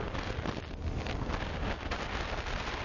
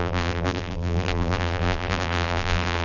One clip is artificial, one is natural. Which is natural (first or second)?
first